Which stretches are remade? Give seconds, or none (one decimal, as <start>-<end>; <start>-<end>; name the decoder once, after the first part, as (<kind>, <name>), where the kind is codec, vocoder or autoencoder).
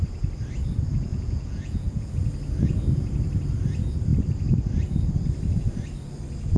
1.1-2.1 (vocoder, Vocos)